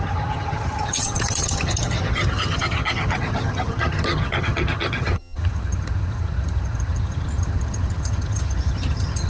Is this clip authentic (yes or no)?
no